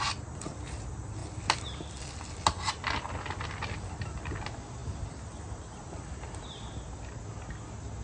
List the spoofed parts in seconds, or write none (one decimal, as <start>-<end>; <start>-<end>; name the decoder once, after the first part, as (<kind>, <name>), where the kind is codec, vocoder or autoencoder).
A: none